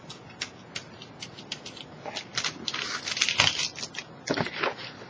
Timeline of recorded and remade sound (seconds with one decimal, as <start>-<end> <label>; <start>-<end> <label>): 0.0-5.1 recorded